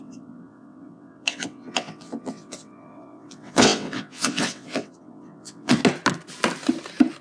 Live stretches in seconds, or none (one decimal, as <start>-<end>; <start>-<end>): 5.8-7.2